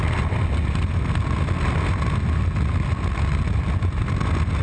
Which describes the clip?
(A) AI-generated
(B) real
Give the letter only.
B